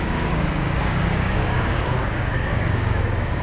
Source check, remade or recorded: remade